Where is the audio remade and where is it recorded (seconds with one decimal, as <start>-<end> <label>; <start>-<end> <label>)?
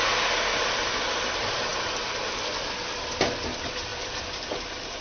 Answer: 0.0-5.0 recorded